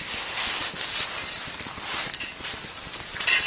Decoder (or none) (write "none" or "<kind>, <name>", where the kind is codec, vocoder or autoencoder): none